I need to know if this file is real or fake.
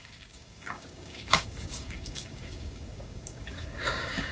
fake